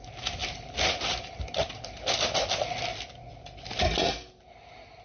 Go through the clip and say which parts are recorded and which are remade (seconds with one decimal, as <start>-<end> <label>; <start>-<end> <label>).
0.0-0.4 recorded; 0.4-2.0 remade; 2.0-5.0 recorded